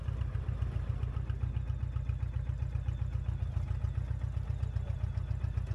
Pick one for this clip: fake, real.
real